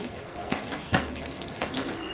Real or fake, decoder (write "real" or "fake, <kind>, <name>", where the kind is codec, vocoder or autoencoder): fake, codec, SNAC